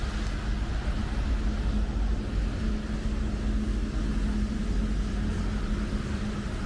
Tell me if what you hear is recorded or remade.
recorded